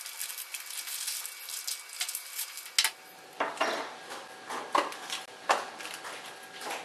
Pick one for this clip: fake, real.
real